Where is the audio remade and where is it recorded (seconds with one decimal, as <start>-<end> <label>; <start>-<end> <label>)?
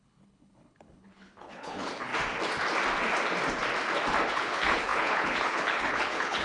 0.0-2.1 remade; 2.1-4.3 recorded; 4.3-6.4 remade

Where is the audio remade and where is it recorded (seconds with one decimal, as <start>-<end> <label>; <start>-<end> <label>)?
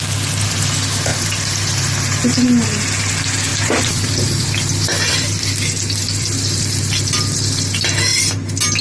0.0-1.1 recorded; 1.1-1.8 remade; 1.8-3.5 recorded; 3.5-7.0 remade; 7.0-8.8 recorded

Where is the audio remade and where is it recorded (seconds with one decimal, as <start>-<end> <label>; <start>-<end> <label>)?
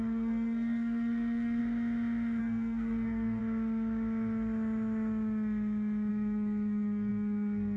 0.0-1.6 remade; 1.6-2.4 recorded; 2.4-3.4 remade; 3.4-6.1 recorded; 6.1-7.8 remade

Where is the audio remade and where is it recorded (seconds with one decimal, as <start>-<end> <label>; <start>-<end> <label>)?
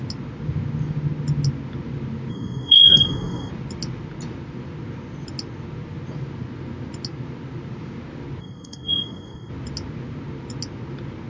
0.0-2.3 recorded; 2.3-3.5 remade; 3.5-8.4 recorded; 8.4-9.5 remade; 9.5-11.3 recorded